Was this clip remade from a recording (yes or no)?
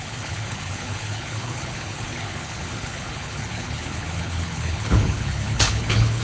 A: yes